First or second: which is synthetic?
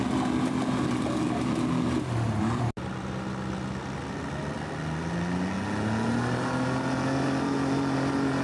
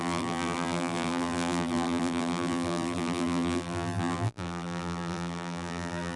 second